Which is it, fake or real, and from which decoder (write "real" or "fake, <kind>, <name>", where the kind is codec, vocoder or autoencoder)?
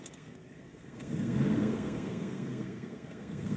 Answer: fake, codec, SNAC